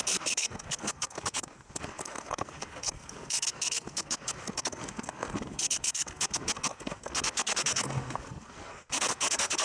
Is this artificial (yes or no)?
yes